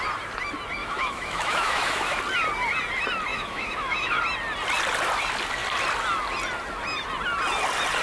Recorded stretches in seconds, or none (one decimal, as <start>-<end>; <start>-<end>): 0.0-0.8; 2.2-3.3; 4.2-8.0